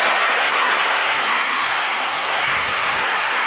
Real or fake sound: fake